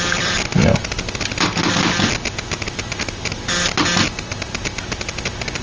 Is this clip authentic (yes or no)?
yes